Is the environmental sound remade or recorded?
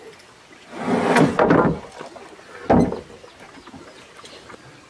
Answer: recorded